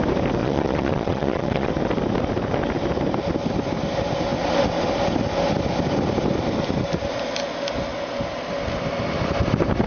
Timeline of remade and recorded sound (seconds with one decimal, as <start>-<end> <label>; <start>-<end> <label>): 0.0-0.4 recorded; 0.4-1.7 remade; 1.7-9.9 recorded